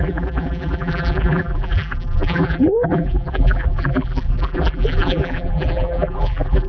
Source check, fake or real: fake